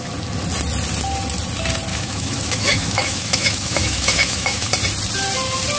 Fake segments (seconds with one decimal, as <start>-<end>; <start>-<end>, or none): 1.9-4.7